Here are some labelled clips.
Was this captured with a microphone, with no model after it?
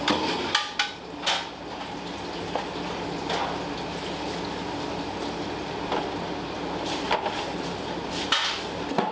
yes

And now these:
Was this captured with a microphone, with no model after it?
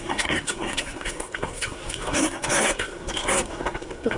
no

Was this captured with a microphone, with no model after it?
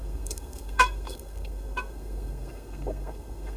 no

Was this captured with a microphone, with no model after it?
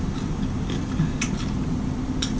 yes